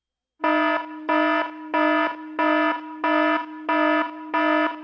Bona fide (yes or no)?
yes